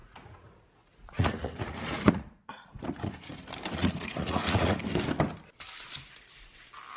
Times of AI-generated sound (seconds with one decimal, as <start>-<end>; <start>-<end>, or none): 0.0-3.1; 3.8-4.8